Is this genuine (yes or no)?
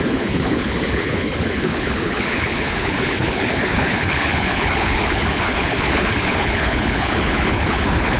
no